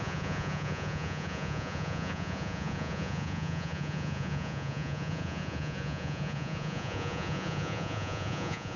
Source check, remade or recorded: remade